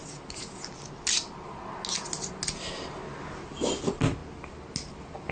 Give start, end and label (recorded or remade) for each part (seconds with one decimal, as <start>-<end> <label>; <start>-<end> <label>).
0.0-5.3 recorded